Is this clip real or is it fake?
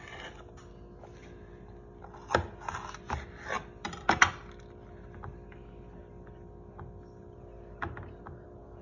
real